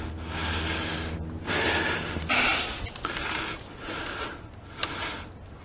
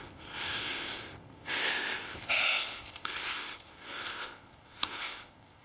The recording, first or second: first